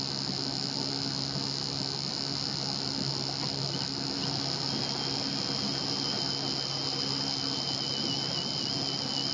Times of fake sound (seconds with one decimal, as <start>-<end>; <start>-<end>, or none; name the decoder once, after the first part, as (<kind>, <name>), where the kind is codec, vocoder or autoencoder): none